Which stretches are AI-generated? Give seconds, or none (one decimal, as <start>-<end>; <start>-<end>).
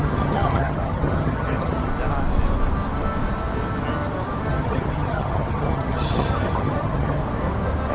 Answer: 0.0-1.9; 4.5-7.2